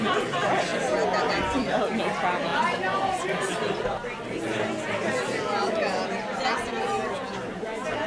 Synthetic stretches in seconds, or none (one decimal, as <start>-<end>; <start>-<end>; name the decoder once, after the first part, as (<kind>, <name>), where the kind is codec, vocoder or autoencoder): none